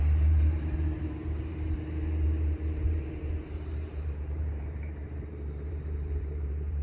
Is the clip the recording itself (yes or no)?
no